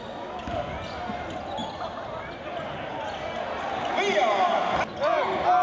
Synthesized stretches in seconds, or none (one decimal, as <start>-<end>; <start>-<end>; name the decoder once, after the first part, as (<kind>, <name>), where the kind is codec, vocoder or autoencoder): none